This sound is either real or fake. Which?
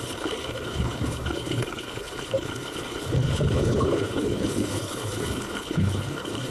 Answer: fake